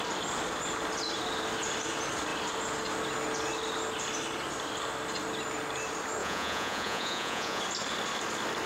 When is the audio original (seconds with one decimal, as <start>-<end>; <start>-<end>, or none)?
0.0-6.2; 7.6-8.7